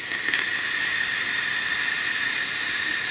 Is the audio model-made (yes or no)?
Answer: no